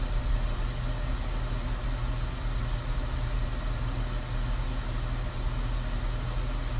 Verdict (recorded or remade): recorded